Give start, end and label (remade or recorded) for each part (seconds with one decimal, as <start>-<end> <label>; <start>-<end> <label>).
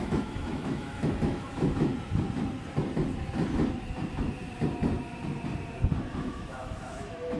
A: 0.0-1.9 remade; 1.9-6.2 recorded; 6.2-7.4 remade